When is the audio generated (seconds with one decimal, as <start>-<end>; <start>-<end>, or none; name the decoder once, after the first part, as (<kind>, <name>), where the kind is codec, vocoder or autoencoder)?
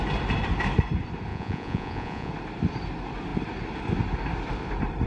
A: 1.3-2.3 (vocoder, Vocos)